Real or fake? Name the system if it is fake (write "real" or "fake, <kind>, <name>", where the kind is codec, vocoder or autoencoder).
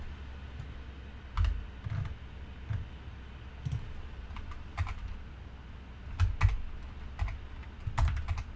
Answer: real